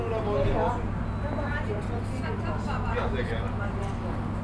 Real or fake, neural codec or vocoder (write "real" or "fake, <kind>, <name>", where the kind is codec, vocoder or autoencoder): real